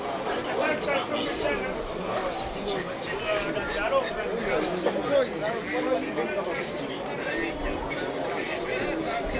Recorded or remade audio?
recorded